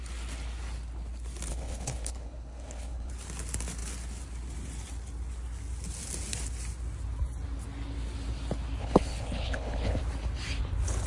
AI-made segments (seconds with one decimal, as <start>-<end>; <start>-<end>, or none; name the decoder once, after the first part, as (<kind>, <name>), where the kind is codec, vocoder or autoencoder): 1.5-3.1 (codec, HILCodec); 8.8-10.0